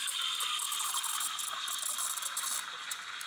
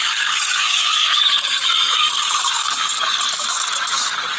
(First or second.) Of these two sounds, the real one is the first